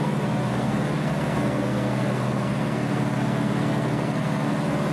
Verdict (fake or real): fake